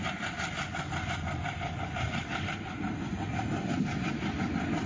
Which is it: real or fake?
real